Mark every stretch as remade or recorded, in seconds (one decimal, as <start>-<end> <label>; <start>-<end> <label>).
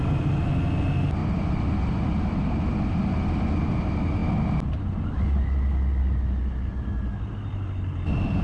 0.0-8.4 recorded